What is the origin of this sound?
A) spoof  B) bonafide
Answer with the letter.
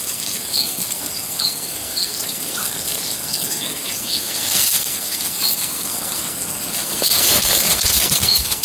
A